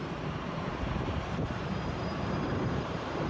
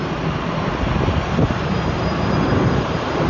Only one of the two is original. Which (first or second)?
second